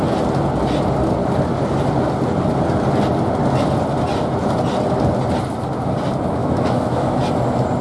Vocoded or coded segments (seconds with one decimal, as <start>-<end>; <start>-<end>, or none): 6.4-7.2